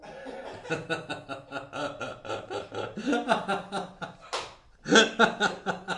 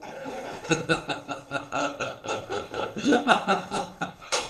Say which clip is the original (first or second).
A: first